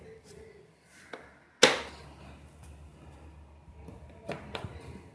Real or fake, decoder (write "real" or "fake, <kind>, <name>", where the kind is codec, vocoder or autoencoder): real